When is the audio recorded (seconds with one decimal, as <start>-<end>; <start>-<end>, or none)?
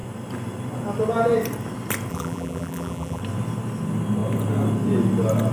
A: 0.0-2.1; 3.2-5.5